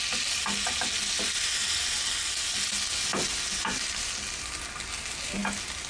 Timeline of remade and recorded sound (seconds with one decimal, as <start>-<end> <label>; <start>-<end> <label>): 0.0-5.9 recorded